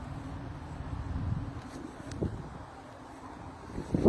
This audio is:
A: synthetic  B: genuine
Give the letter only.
B